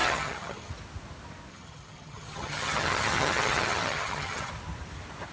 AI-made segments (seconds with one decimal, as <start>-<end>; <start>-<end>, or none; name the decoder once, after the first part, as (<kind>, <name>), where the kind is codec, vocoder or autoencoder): 0.0-0.7 (vocoder, HiFi-GAN); 1.5-4.5